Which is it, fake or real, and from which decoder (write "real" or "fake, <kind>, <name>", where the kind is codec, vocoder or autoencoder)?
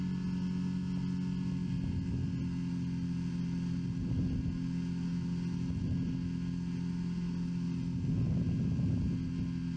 real